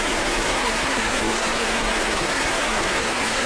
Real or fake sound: fake